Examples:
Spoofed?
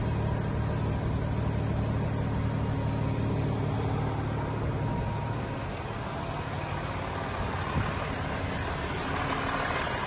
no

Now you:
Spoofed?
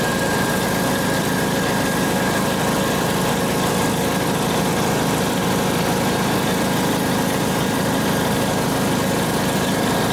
no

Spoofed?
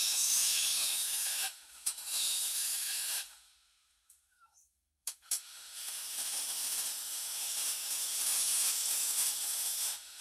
yes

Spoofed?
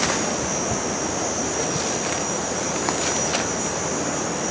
no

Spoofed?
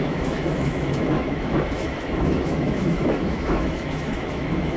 yes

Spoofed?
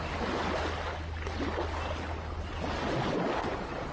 no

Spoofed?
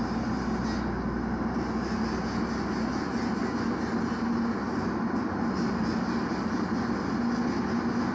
no